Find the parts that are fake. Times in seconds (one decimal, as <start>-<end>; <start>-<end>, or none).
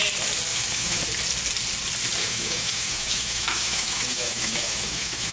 0.5-1.0; 2.2-5.3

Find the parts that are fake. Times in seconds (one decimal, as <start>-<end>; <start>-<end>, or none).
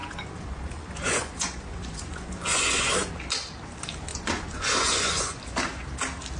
0.0-3.1; 4.1-5.4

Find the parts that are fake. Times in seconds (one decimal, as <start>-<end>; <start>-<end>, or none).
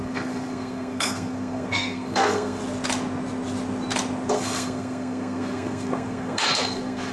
0.0-2.6; 4.3-7.1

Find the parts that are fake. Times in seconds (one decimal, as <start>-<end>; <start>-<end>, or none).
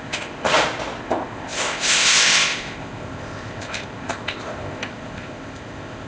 0.0-0.5; 1.0-6.1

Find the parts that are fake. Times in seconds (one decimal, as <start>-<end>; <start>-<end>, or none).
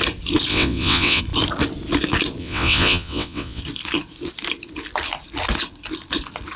0.5-1.2; 2.4-3.6